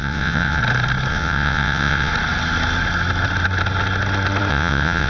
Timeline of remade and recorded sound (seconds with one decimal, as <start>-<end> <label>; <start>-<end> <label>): 0.0-0.6 remade; 0.6-1.1 recorded; 1.1-2.1 remade; 2.1-4.5 recorded; 4.5-5.1 remade

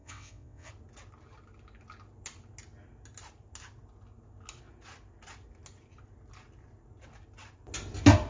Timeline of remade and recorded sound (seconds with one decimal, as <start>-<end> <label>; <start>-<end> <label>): 0.0-0.7 remade; 0.7-8.3 recorded

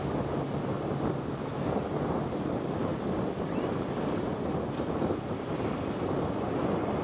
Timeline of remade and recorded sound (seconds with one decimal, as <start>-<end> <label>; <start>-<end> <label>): 0.0-7.0 recorded

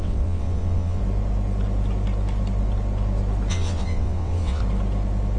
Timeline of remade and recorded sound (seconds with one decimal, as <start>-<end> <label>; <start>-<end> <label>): 0.0-1.0 remade; 1.0-3.5 recorded; 3.5-4.6 remade; 4.6-5.4 recorded

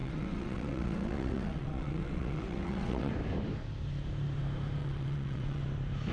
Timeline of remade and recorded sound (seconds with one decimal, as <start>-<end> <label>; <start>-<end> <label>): 0.0-3.1 remade; 3.1-4.8 recorded; 4.8-5.6 remade; 5.6-6.1 recorded